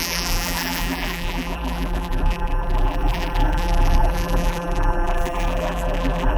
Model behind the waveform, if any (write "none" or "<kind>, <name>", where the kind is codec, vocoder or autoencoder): vocoder, BigVGAN v2